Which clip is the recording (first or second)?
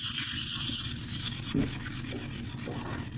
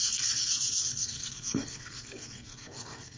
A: first